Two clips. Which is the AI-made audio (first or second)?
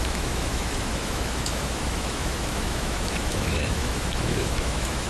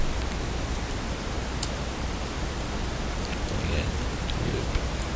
first